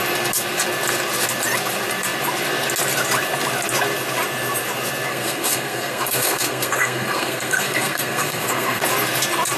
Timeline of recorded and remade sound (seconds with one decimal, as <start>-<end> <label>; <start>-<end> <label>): 0.0-5.1 recorded; 5.1-8.8 remade; 8.8-9.6 recorded